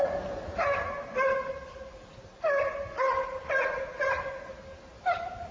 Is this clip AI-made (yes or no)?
no